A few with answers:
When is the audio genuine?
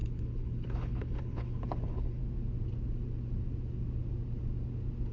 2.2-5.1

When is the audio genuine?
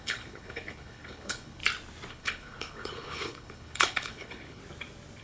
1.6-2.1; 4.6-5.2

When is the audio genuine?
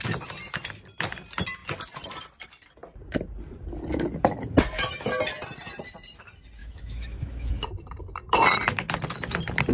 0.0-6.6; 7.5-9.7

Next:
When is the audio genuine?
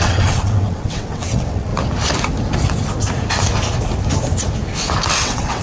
1.7-5.1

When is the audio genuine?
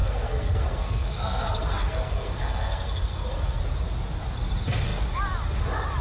3.6-6.0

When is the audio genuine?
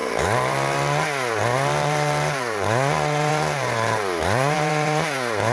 none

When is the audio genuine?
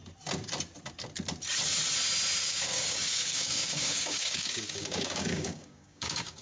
0.0-2.4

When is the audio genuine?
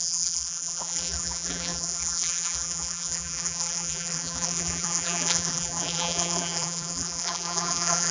none